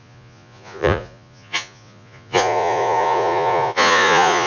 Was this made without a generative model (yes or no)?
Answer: no